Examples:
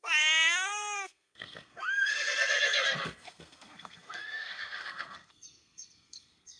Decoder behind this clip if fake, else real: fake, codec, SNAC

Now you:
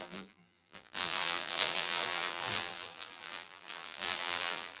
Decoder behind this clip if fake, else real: fake, vocoder, BigVGAN v2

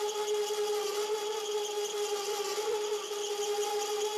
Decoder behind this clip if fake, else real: real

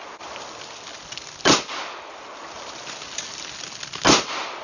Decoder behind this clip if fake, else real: real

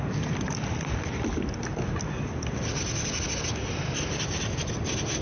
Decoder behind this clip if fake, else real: real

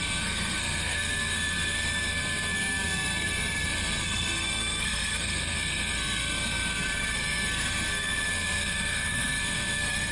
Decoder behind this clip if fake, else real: fake, codec, SNAC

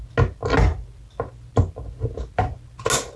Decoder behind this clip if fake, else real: real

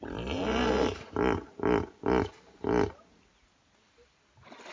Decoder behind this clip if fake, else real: real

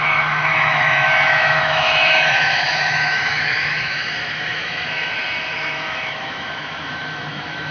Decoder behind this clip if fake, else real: fake, autoencoder, DAC-VAE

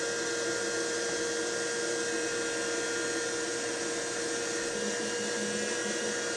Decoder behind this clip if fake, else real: real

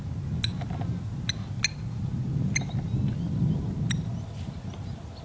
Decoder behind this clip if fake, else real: real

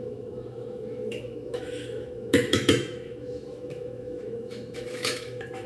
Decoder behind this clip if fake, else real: fake, autoencoder, DAC-VAE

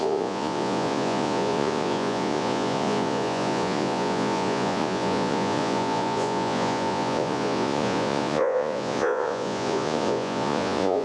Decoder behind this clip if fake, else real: fake, vocoder, Vocos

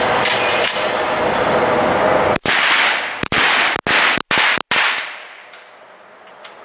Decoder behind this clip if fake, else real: real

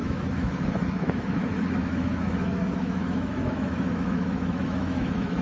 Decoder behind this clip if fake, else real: fake, autoencoder, DAC-VAE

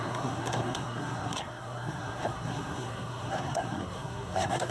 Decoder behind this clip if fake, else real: fake, codec, SNAC